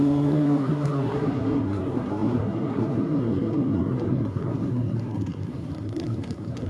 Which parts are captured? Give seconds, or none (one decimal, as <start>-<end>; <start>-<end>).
none